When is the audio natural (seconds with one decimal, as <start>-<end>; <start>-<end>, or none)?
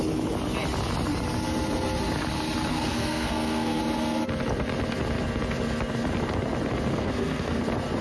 0.0-2.7; 3.8-6.9; 7.6-8.0